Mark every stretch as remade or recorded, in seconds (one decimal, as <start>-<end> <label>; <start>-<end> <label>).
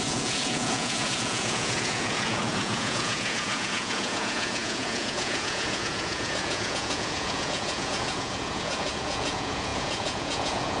0.0-10.8 remade